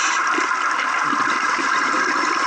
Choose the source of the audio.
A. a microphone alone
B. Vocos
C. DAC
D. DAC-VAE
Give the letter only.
A